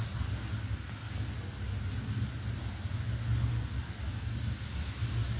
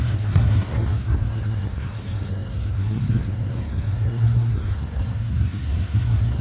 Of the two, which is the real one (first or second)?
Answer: first